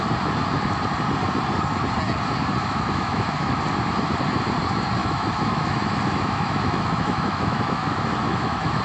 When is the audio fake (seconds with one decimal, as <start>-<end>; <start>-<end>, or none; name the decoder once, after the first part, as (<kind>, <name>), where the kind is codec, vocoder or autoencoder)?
2.6-3.6 (autoencoder, DAC-VAE); 5.0-8.8